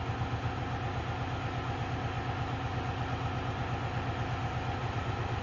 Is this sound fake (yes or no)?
no